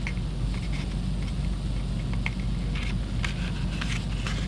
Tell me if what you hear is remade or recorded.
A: recorded